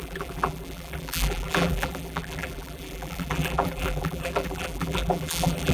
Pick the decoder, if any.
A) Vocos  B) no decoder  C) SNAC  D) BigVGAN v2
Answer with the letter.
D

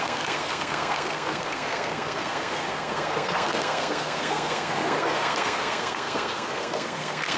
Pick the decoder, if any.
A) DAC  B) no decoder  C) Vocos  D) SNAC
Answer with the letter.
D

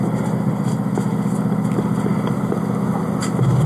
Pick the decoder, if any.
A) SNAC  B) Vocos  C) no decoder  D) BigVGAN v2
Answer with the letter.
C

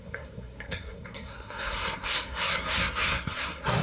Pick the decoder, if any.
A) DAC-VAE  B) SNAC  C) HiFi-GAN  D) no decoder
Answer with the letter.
B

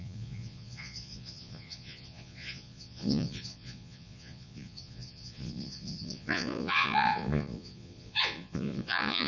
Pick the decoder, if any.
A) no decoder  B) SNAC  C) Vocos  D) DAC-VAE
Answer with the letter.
C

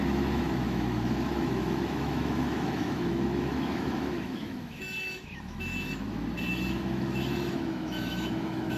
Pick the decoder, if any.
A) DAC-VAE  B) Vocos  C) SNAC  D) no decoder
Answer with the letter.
A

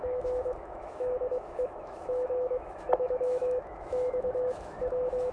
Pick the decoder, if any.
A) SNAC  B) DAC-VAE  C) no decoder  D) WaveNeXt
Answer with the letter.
B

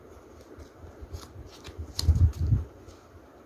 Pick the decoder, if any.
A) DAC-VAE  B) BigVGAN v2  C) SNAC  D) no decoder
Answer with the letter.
D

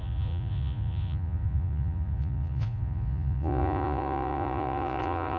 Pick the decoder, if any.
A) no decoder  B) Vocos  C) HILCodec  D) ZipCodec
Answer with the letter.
B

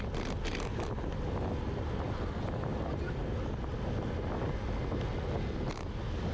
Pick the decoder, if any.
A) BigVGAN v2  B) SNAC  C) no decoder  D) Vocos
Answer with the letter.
C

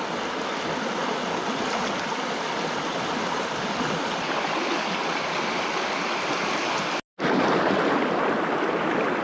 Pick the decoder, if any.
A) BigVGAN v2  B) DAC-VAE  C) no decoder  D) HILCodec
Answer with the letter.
C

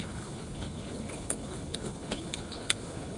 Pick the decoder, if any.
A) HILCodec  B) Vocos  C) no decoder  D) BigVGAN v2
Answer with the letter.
A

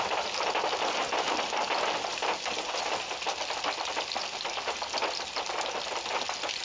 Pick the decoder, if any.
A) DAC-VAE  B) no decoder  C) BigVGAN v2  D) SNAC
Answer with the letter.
B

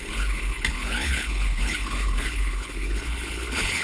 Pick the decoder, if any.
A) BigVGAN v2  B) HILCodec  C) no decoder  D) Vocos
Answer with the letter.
B